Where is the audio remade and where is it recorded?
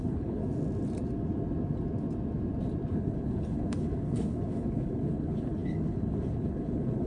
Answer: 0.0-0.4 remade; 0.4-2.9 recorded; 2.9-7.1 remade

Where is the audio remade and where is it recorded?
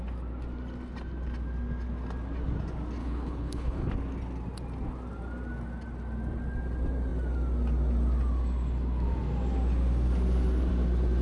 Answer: 0.0-3.0 recorded; 3.0-3.9 remade; 3.9-11.2 recorded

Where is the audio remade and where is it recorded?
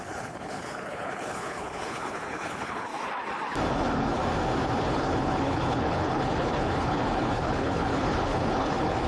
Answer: 0.0-2.9 remade; 2.9-3.7 recorded; 3.7-4.2 remade; 4.2-4.8 recorded; 4.8-9.1 remade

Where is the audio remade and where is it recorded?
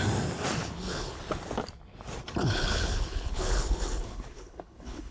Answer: 0.0-0.6 recorded; 0.6-1.2 remade; 1.2-2.4 recorded; 2.4-5.1 remade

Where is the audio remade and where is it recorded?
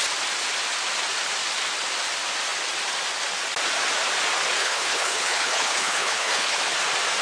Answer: 0.0-4.6 recorded; 4.6-6.6 remade; 6.6-7.2 recorded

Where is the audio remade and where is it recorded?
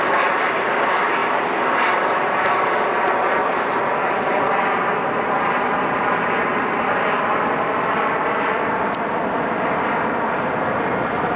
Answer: 0.0-11.4 recorded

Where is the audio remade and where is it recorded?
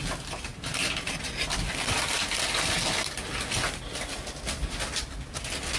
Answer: 0.0-5.8 recorded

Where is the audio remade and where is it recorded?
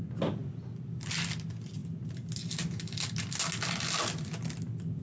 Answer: 0.0-5.0 recorded